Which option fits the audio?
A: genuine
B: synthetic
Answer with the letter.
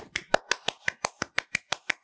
A